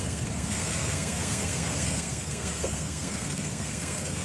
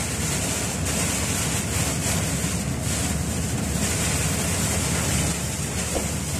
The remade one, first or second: first